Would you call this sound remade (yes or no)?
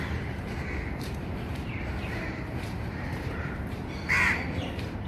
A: yes